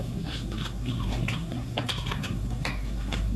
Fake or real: fake